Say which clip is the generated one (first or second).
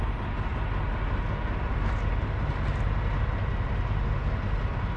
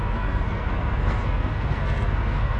second